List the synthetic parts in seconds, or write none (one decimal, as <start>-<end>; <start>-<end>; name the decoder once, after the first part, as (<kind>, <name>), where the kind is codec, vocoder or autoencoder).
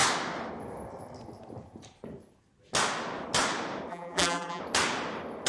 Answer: 3.9-4.6 (vocoder, BigVGAN v2)